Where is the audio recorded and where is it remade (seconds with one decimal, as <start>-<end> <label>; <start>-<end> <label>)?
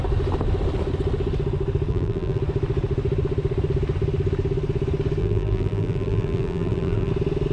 0.0-1.9 recorded; 1.9-2.4 remade; 2.4-5.2 recorded; 5.2-7.1 remade; 7.1-7.5 recorded